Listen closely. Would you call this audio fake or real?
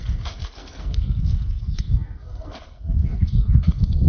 fake